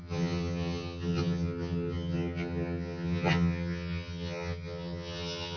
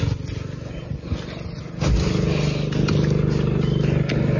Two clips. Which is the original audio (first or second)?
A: second